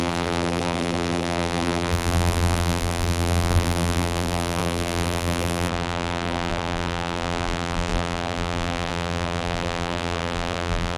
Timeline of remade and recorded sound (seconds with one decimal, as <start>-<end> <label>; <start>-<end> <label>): 0.0-11.0 remade